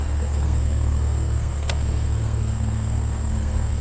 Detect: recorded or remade remade